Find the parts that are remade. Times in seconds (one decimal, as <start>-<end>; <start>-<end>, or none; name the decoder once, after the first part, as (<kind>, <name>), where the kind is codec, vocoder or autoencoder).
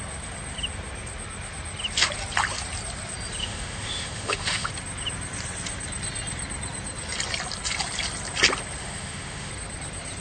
3.4-4.7 (autoencoder, DAC-VAE); 8.8-9.5